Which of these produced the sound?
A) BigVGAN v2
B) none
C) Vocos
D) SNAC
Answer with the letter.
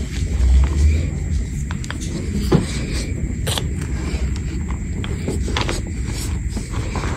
B